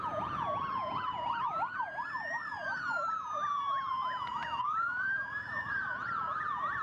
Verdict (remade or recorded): remade